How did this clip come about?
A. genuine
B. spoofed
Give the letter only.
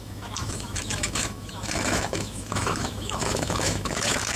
B